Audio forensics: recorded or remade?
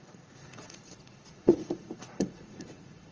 remade